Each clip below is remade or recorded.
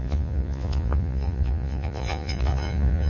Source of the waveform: remade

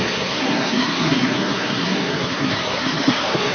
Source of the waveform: remade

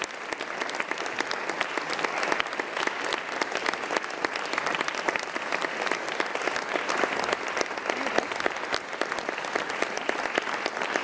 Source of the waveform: recorded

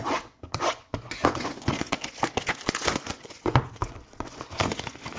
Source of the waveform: remade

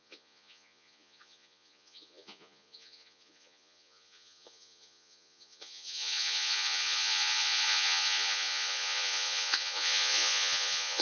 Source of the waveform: remade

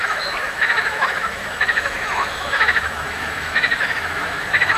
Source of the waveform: remade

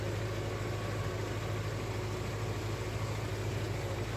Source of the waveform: recorded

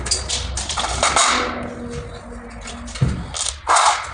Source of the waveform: recorded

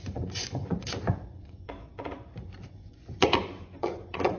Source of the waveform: remade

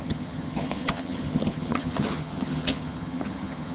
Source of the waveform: remade